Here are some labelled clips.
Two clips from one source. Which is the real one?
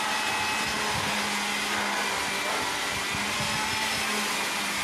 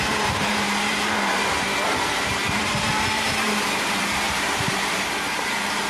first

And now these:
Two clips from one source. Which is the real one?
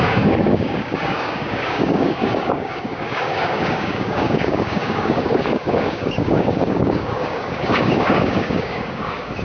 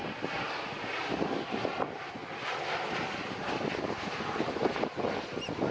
second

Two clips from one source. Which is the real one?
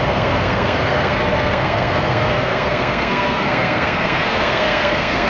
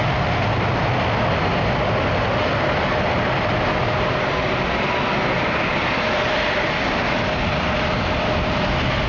second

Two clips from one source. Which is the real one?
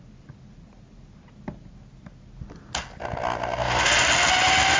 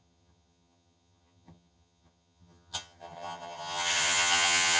first